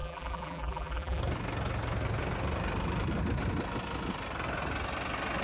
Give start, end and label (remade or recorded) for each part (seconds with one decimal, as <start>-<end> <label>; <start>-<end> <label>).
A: 0.0-1.2 remade; 1.2-5.4 recorded